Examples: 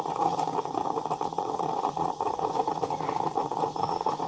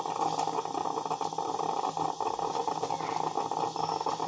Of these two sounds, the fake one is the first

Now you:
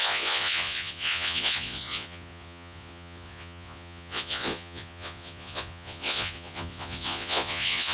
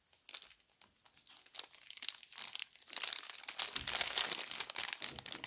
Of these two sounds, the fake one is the first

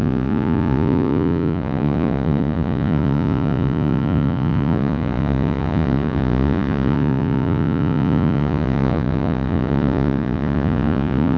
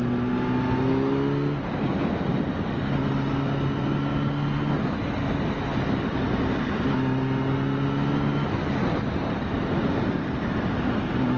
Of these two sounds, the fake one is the first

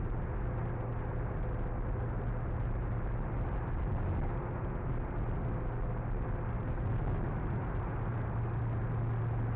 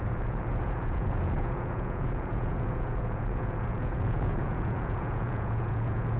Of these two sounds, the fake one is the second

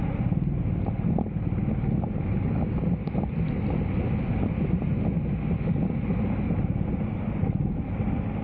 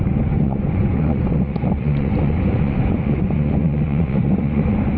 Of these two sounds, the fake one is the second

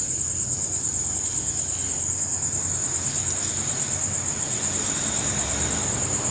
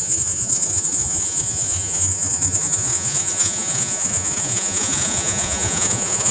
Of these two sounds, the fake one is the second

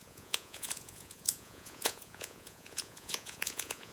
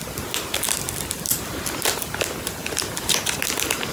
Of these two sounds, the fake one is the first